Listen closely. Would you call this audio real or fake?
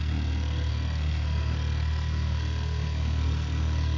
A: fake